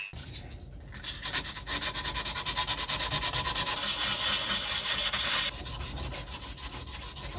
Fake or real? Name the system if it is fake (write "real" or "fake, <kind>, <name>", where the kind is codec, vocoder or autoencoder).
real